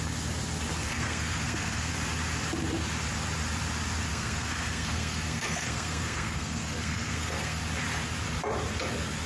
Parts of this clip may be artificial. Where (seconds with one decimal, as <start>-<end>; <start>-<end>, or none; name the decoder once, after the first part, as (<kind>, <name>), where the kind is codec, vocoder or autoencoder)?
0.8-1.9 (codec, SNAC); 4.1-7.6